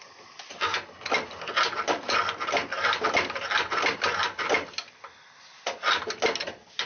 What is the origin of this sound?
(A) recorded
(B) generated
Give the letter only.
A